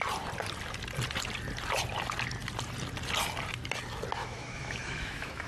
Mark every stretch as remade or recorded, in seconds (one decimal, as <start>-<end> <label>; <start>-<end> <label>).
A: 0.0-4.2 recorded; 4.2-5.5 remade